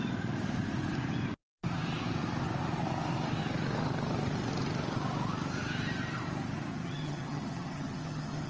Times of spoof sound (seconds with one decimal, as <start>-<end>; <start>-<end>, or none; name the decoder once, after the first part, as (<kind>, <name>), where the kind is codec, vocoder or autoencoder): 6.7-8.5 (vocoder, HiFi-GAN)

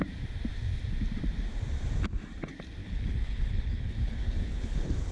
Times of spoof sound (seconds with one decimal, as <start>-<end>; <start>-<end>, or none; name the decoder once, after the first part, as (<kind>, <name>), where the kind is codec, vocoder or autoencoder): 2.8-5.1 (codec, HILCodec)